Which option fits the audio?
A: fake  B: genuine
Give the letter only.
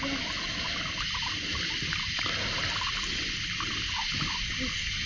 B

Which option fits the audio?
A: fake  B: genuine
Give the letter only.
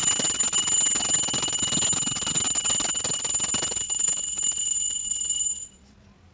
B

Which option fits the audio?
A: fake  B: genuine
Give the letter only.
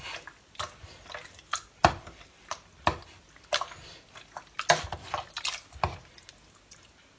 B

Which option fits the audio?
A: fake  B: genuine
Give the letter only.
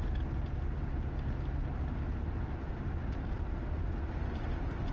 B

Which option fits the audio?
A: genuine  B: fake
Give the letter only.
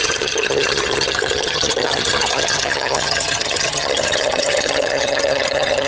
B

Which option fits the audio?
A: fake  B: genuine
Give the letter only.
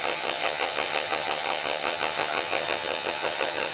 A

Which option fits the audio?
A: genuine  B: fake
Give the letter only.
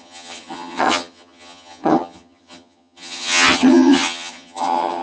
B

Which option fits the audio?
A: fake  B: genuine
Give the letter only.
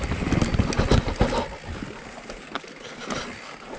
B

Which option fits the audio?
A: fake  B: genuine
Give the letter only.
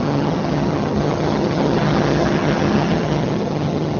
A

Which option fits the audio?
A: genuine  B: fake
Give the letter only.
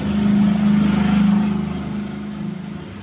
A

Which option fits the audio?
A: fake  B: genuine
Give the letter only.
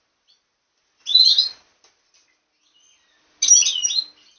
B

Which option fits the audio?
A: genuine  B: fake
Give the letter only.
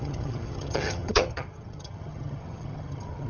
B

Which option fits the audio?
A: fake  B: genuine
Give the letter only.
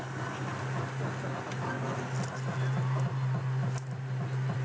B